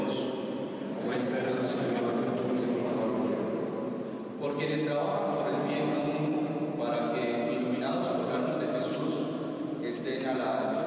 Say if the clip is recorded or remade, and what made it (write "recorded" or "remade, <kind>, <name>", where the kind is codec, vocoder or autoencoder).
recorded